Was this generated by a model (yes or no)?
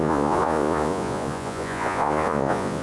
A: yes